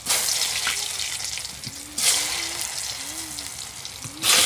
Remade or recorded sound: recorded